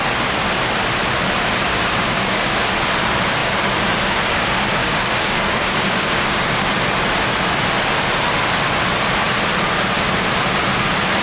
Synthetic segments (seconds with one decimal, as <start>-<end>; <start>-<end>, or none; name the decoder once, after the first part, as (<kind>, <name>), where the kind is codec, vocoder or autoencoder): 1.7-2.6 (codec, DAC); 4.8-6.7